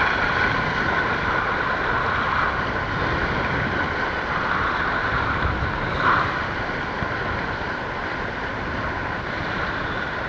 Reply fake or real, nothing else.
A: real